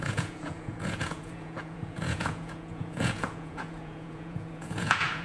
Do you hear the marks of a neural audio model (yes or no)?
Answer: yes